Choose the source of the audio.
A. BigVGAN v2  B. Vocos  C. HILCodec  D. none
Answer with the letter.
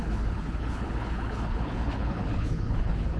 C